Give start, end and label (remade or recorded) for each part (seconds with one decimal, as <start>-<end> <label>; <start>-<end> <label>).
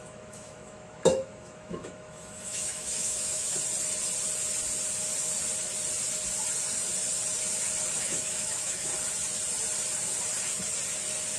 0.0-3.5 remade; 3.5-8.0 recorded; 8.0-8.9 remade; 8.9-11.4 recorded